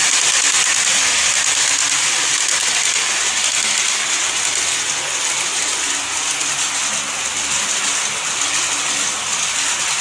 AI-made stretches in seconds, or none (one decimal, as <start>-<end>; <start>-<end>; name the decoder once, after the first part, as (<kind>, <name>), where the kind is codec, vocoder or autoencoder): none